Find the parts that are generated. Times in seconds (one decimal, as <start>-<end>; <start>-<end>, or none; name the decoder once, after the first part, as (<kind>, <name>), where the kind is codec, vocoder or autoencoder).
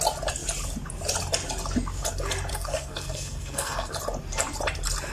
2.5-3.9 (codec, SNAC)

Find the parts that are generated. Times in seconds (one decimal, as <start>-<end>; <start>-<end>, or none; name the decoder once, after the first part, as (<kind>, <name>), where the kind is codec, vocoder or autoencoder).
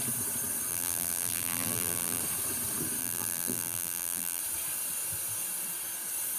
0.7-2.2 (vocoder, BigVGAN v2); 3.0-4.4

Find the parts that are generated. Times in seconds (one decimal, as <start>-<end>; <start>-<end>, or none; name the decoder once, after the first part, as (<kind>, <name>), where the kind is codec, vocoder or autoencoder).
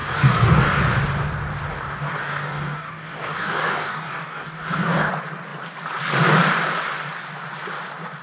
0.0-0.8 (codec, DAC); 1.7-5.1